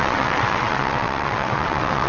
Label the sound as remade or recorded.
remade